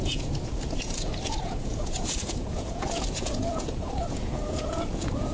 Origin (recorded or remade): remade